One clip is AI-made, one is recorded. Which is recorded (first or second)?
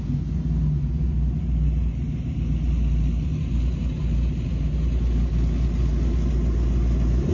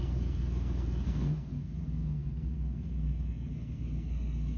first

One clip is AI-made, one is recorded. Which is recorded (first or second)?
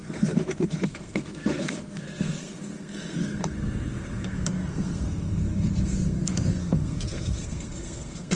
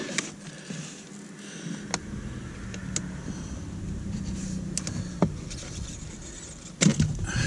second